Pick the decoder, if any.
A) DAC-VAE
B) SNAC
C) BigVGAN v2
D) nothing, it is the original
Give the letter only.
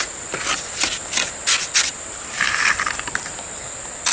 D